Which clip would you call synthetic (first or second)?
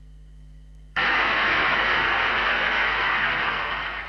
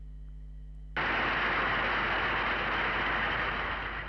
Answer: first